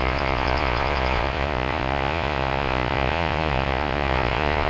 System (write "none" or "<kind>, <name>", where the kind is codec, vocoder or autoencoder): vocoder, Vocos